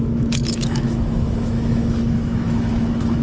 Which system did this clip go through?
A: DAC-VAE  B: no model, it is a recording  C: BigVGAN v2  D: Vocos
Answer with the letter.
A